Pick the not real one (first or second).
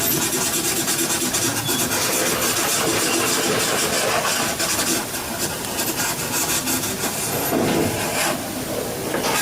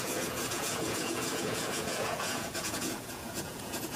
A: second